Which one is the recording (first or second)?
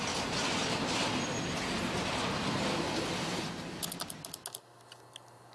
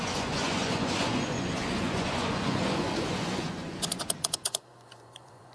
first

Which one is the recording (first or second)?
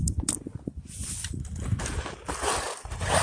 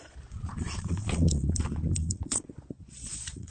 first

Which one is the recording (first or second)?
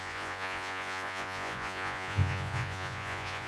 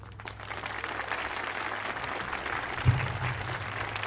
second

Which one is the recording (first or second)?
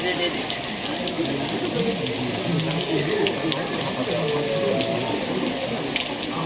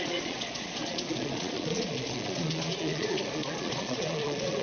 first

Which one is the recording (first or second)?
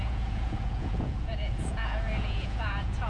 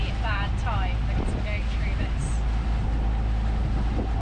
second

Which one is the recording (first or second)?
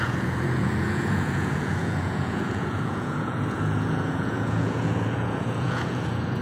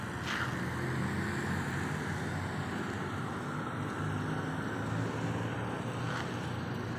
second